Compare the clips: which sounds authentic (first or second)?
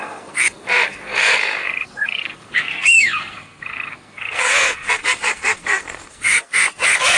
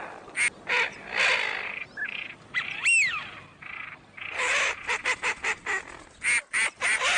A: second